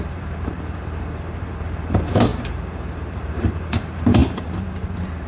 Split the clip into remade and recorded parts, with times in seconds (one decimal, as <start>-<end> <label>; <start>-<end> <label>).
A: 0.0-5.3 remade